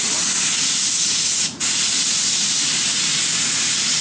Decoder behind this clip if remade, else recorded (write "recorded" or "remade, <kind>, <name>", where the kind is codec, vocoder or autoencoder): remade, vocoder, Vocos